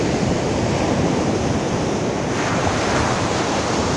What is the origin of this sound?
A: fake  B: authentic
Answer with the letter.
A